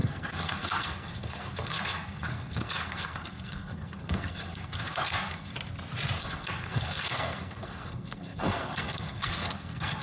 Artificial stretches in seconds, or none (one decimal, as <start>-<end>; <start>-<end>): 0.0-5.5; 6.2-10.0